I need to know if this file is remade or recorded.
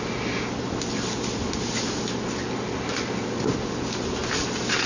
recorded